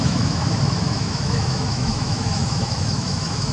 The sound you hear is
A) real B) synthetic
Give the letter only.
B